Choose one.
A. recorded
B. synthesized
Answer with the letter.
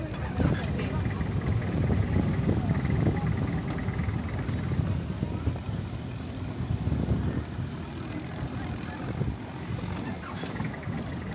A